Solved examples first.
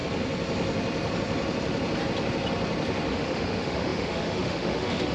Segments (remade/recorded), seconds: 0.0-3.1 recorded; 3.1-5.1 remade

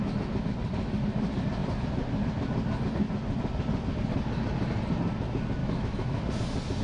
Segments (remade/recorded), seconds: 0.0-5.6 recorded; 5.6-6.3 remade; 6.3-6.8 recorded

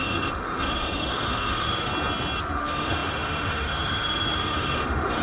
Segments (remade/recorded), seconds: 0.0-1.9 remade; 1.9-2.5 recorded; 2.5-5.2 remade